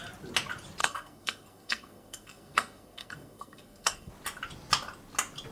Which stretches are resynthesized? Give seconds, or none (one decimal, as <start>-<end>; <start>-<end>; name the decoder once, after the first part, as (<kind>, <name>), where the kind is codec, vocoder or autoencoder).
0.8-4.1 (codec, SNAC)